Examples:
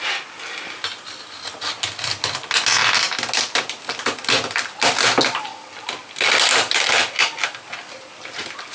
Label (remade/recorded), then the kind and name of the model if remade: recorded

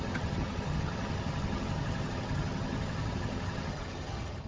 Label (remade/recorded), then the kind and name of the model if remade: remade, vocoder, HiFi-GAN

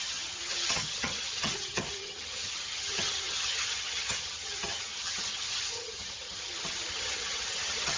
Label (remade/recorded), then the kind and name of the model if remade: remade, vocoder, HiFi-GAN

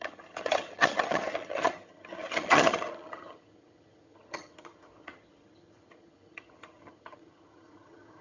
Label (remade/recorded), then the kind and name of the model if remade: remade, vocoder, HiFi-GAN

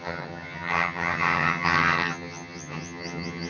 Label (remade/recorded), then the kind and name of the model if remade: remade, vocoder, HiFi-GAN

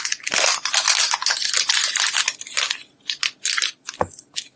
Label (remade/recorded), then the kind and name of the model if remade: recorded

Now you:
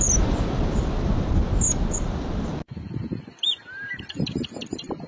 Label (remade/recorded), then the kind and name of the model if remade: recorded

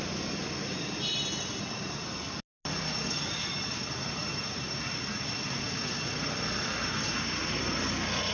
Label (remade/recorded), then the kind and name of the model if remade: recorded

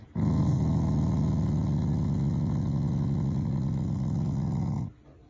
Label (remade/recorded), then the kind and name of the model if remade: recorded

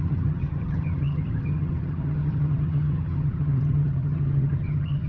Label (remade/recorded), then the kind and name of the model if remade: remade, vocoder, HiFi-GAN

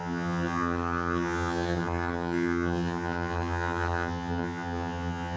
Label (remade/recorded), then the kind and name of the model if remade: remade, vocoder, HiFi-GAN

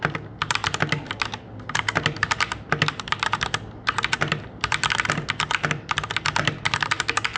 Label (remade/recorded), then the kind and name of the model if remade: recorded